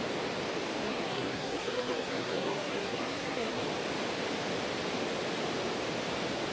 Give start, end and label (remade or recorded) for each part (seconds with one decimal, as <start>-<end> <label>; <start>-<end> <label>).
0.0-0.8 recorded; 0.8-3.6 remade; 3.6-6.5 recorded